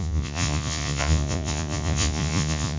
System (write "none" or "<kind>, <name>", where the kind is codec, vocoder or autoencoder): vocoder, Vocos